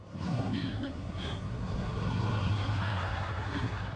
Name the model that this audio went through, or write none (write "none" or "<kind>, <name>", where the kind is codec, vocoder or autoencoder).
codec, SNAC